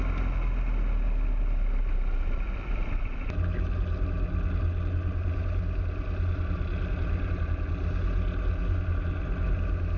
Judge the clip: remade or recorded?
recorded